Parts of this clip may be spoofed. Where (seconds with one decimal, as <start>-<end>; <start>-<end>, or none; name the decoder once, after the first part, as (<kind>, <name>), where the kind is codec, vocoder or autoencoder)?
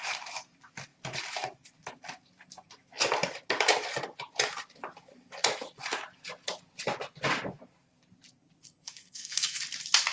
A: 8.6-9.6 (codec, SNAC)